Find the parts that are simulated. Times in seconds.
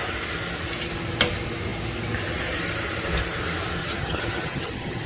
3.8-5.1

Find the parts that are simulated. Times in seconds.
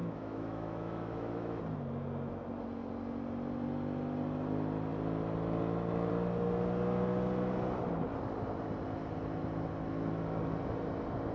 0.0-1.6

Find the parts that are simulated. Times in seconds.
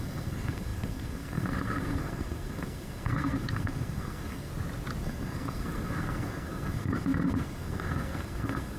0.0-4.5; 5.0-8.8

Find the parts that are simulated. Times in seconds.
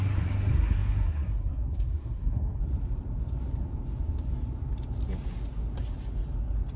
0.0-2.6